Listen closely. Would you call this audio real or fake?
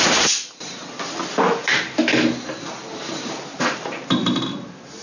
real